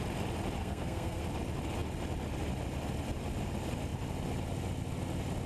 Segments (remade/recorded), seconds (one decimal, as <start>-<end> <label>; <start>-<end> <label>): 0.0-0.6 recorded; 0.6-1.2 remade; 1.2-5.5 recorded